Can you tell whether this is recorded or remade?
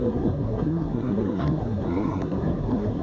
remade